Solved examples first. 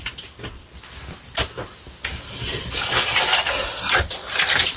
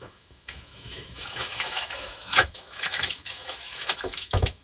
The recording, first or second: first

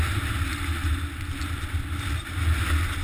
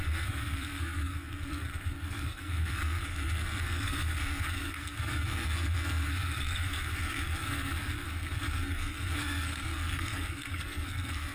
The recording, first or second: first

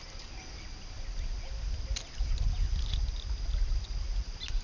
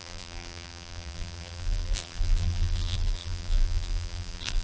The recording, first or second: first